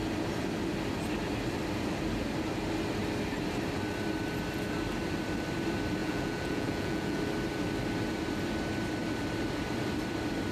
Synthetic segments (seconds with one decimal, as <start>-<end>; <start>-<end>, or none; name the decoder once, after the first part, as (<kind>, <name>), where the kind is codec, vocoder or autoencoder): 6.0-7.2 (vocoder, Vocos)